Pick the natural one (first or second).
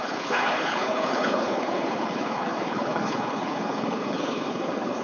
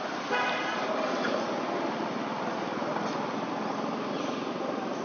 second